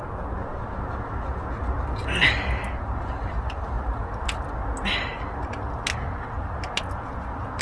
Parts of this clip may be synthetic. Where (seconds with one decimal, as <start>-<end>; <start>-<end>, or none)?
none